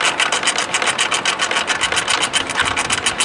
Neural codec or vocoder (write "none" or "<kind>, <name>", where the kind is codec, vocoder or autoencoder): none